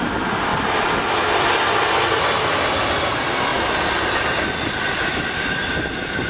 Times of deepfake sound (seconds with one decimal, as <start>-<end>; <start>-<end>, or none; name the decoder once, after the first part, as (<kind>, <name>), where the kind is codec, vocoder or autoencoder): 0.0-0.5 (vocoder, BigVGAN v2); 1.4-3.5; 4.2-5.1; 5.7-6.3